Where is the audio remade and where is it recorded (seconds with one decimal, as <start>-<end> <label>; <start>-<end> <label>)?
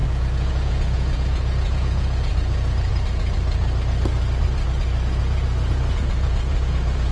0.0-2.9 remade; 2.9-5.2 recorded; 5.2-7.1 remade